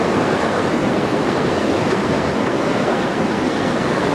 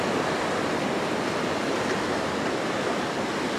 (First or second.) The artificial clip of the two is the first